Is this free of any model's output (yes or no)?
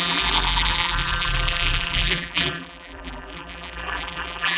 no